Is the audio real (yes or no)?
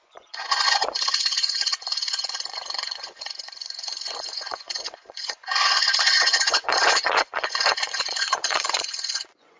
no